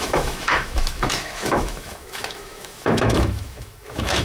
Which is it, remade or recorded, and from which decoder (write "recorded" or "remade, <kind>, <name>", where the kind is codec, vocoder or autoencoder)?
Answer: remade, autoencoder, DAC-VAE